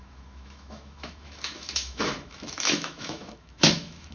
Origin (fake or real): fake